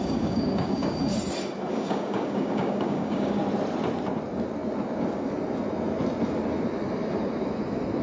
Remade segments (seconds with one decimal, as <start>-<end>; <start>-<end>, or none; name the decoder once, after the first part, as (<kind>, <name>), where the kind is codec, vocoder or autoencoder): 0.0-1.1 (codec, DAC); 1.7-3.4